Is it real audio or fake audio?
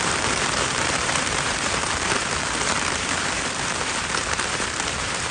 fake